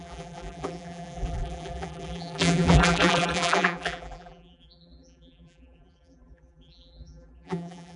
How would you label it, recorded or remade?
remade